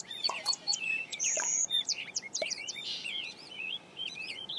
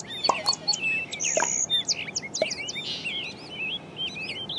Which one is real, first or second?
second